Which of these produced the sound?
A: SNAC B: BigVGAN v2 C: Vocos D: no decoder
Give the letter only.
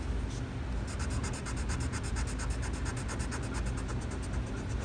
D